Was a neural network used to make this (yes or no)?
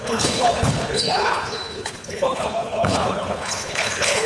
yes